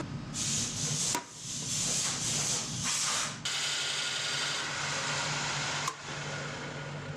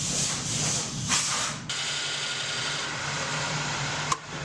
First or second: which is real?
first